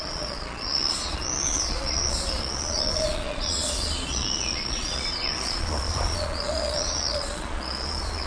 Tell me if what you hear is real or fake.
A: fake